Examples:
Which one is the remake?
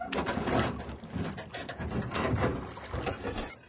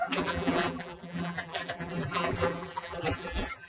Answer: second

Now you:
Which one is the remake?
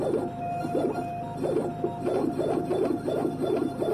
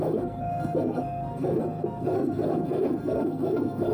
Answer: second